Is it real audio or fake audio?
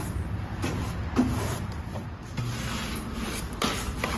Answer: real